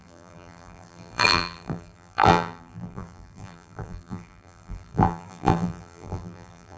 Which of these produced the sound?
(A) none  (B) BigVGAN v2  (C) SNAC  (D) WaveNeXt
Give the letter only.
B